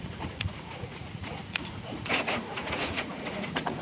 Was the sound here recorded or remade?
remade